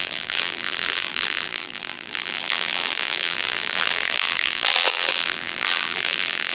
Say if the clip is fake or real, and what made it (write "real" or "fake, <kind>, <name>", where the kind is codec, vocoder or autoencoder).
fake, vocoder, BigVGAN v2